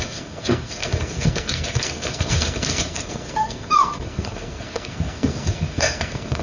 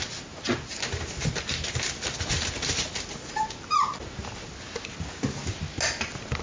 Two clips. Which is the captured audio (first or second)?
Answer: second